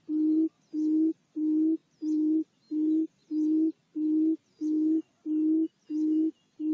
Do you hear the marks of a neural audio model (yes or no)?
no